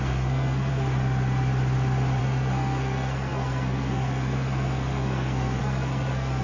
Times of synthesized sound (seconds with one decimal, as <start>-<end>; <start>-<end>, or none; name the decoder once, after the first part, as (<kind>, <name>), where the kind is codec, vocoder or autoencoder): 0.0-0.7 (codec, SNAC); 2.2-6.4